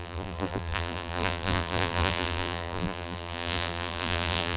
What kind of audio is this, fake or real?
fake